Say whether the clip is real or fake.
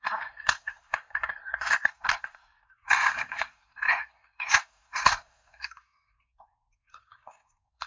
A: fake